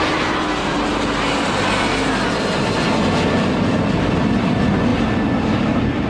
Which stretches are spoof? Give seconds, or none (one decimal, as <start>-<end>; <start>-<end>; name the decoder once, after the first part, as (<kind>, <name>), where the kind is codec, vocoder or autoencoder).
none